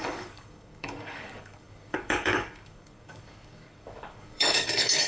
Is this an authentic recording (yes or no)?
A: no